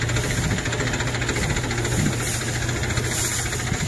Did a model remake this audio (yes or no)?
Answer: no